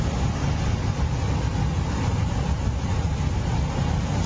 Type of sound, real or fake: real